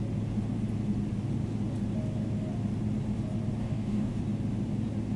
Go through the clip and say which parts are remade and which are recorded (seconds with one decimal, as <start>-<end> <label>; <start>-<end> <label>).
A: 0.0-3.6 recorded; 3.6-4.2 remade; 4.2-5.2 recorded